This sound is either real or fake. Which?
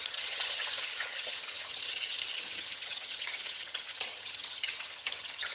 fake